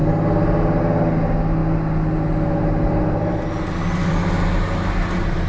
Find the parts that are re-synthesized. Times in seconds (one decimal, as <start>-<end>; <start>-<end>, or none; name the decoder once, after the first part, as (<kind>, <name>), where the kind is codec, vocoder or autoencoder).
none